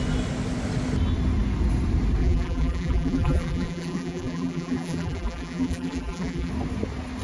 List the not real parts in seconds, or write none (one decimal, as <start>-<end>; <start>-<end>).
2.2-6.5

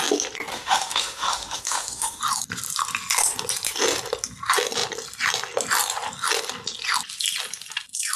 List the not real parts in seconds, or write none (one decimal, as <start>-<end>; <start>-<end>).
0.5-2.2

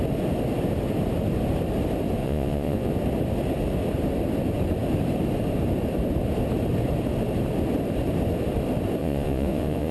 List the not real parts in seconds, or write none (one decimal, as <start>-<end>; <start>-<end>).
2.2-2.9; 9.0-9.9

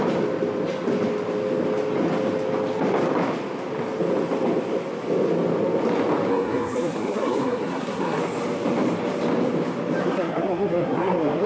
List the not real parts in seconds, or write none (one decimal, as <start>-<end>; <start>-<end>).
6.3-8.2; 10.0-11.5

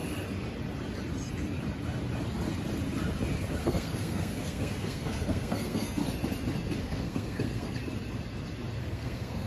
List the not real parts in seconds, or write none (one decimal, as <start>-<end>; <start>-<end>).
3.6-6.0; 6.8-7.8; 8.8-9.5

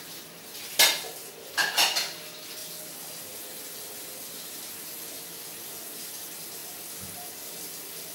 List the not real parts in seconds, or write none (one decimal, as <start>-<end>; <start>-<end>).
none

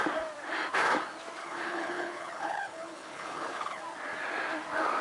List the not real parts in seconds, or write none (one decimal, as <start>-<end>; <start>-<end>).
1.4-3.8

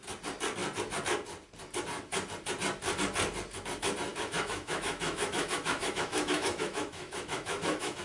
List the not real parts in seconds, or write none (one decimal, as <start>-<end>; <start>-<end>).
4.1-8.0